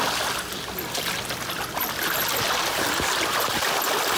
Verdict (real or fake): real